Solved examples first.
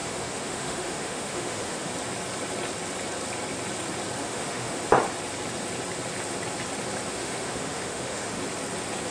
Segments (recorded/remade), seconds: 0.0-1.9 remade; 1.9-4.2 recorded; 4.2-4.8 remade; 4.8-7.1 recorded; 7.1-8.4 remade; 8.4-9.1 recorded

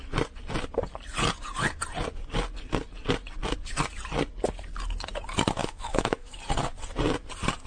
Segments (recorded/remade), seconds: 0.0-5.6 recorded; 5.6-6.4 remade; 6.4-7.7 recorded

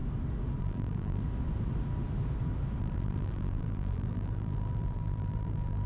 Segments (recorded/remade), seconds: 0.0-0.6 recorded; 0.6-1.2 remade; 1.2-2.8 recorded; 2.8-5.9 remade